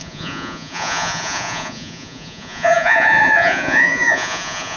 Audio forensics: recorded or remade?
remade